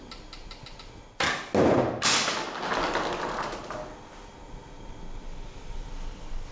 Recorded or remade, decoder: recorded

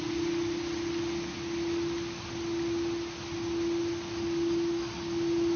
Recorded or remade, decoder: recorded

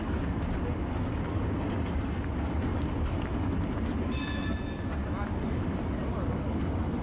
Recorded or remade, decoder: recorded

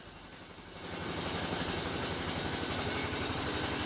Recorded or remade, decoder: recorded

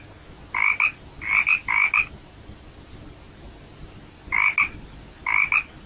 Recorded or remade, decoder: recorded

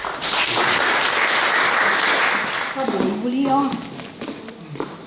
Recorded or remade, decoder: recorded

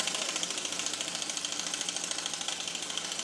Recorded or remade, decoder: recorded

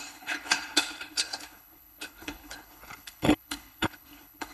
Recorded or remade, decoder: remade, codec, HILCodec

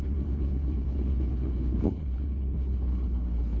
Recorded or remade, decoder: remade, codec, HILCodec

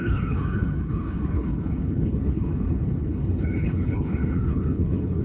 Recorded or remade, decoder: remade, codec, HILCodec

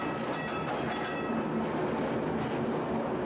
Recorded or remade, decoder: recorded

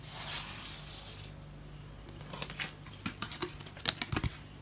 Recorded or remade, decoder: recorded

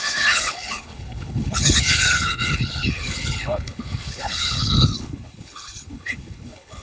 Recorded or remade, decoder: remade, codec, HILCodec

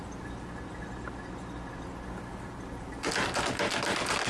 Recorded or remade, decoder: recorded